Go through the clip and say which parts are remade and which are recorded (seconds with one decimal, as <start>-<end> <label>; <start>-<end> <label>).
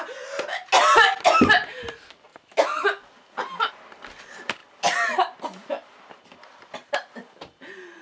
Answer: 0.0-8.0 recorded